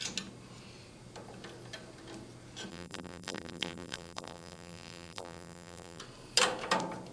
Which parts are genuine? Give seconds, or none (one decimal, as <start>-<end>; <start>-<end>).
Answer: 0.0-2.7; 6.0-7.1

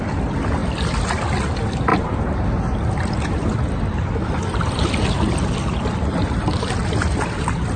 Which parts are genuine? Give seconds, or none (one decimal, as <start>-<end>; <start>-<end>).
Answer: 0.0-0.6; 1.3-1.9; 4.3-6.8

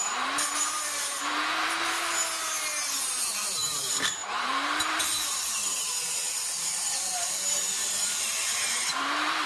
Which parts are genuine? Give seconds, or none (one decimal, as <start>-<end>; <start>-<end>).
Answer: 2.2-3.2

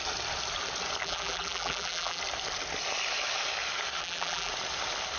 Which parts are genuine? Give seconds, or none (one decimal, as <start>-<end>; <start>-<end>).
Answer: 0.0-1.0; 2.2-4.0; 4.5-5.2

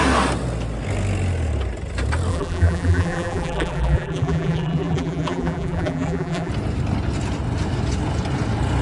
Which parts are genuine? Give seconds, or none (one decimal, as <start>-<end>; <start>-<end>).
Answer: 0.0-2.3; 6.5-8.8